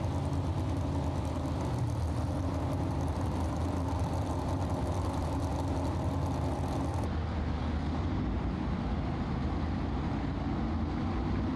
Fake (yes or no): no